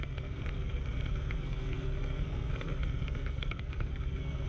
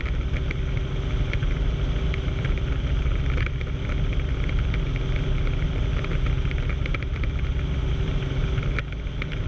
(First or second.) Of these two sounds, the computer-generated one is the first